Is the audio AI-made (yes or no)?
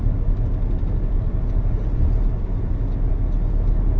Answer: no